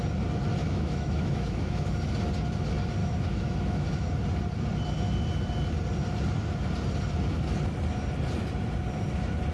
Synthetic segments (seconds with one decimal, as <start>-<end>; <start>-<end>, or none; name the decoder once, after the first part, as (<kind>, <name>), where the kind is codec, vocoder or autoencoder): 0.6-1.9 (autoencoder, DAC-VAE); 3.0-4.1